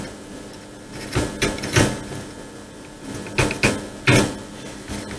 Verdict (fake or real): real